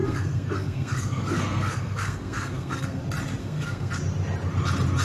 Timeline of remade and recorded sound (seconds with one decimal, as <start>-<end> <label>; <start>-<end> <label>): 0.0-3.0 remade; 3.0-3.4 recorded; 3.4-3.9 remade; 3.9-5.0 recorded